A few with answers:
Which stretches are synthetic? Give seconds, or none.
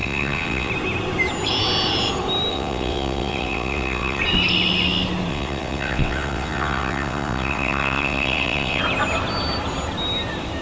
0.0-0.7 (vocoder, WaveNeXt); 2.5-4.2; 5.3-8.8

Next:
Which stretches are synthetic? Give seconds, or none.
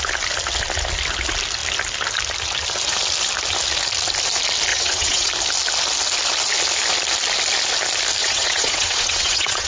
4.7-5.3 (vocoder, WaveNeXt); 8.2-9.7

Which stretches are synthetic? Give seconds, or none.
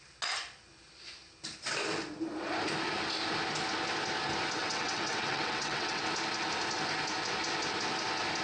4.6-6.0 (vocoder, WaveNeXt)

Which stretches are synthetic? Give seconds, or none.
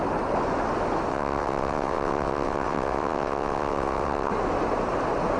1.1-4.3 (vocoder, WaveNeXt)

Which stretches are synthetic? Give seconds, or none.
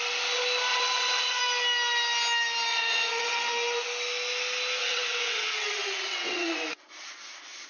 0.7-1.4 (vocoder, WaveNeXt); 2.7-3.5; 4.8-6.8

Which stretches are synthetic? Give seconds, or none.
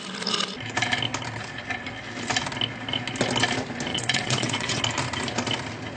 3.9-4.8 (vocoder, WaveNeXt)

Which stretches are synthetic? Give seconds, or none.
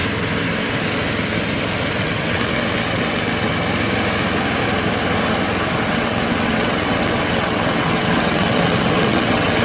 2.0-3.5 (vocoder, WaveNeXt); 5.9-9.6